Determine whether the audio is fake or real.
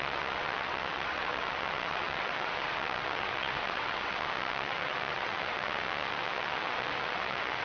fake